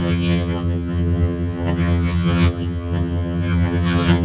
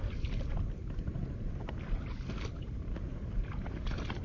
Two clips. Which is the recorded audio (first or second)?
second